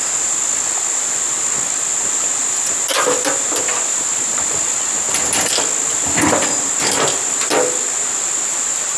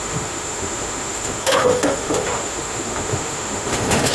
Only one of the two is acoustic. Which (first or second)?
first